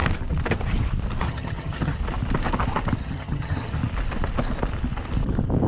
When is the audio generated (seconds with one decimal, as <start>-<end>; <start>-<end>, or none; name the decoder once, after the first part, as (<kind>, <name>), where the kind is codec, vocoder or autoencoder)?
1.2-2.0 (vocoder, HiFi-GAN); 3.0-3.8